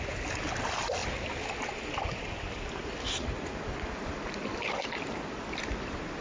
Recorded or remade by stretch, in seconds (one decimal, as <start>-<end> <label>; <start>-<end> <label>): 0.0-6.2 recorded